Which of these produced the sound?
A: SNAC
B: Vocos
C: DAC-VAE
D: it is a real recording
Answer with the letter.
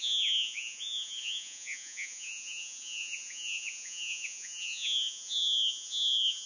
B